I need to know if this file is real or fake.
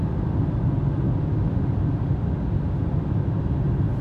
real